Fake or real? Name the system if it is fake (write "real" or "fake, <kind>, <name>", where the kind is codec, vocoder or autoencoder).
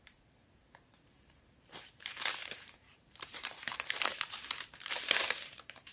fake, vocoder, BigVGAN v2